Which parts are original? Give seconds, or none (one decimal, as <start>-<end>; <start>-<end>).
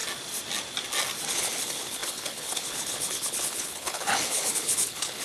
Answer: 0.0-1.3